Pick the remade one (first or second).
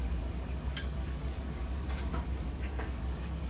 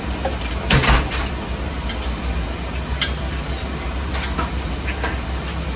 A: first